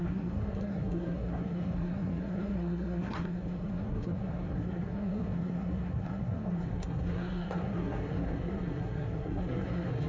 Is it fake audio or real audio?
fake